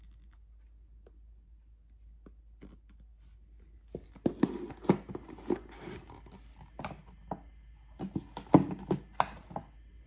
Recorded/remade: recorded